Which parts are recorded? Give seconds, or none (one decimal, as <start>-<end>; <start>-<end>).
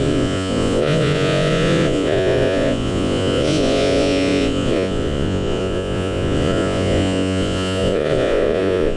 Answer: none